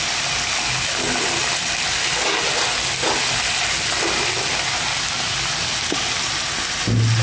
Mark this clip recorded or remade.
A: recorded